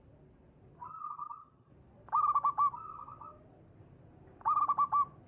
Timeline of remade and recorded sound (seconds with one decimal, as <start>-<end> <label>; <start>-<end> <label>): 0.0-0.9 recorded; 0.9-1.7 remade; 1.7-5.3 recorded